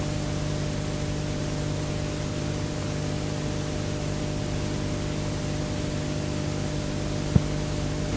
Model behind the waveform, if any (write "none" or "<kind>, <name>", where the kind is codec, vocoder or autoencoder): none